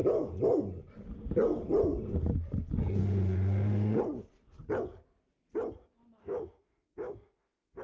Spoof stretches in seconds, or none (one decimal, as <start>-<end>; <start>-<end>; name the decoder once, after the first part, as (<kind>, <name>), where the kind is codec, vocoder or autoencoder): 3.0-4.0 (autoencoder, DAC-VAE); 6.2-7.8